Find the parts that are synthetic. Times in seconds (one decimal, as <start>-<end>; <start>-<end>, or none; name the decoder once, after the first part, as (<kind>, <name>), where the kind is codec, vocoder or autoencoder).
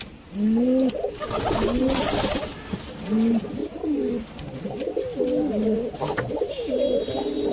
none